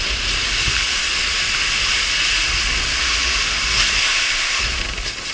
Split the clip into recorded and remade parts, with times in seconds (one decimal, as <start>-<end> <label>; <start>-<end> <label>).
0.0-4.0 recorded; 4.0-4.6 remade; 4.6-5.3 recorded